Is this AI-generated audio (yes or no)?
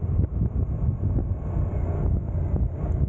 no